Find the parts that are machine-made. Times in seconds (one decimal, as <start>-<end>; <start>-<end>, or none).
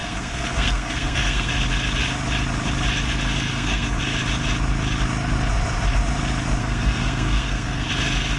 0.0-1.5; 3.5-4.0; 6.6-7.9